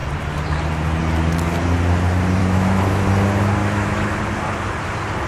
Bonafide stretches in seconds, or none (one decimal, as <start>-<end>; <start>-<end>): 0.0-2.4; 3.1-3.6; 4.2-5.3